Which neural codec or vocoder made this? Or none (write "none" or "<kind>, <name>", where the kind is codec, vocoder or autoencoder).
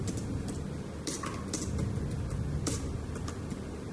none